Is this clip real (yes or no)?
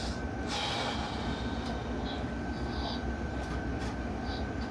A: yes